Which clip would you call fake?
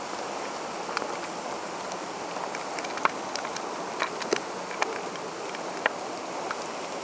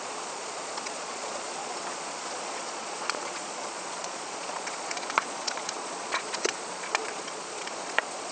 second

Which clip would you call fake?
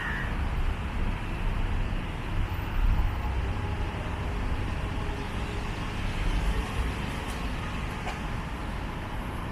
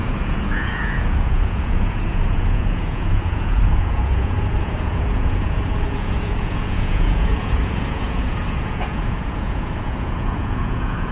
second